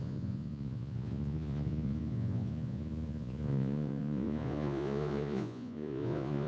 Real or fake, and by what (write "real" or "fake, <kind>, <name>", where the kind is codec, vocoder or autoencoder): fake, vocoder, Vocos